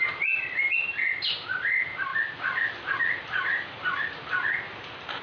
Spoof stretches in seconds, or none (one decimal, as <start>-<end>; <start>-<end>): 2.1-4.0